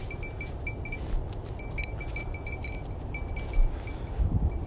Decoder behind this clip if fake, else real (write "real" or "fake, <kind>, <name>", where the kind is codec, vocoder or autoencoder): real